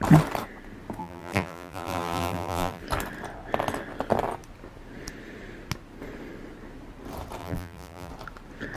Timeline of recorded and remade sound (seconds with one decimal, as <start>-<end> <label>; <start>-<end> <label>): 0.0-1.0 recorded; 1.0-2.8 remade; 2.8-7.4 recorded; 7.4-8.1 remade; 8.1-8.8 recorded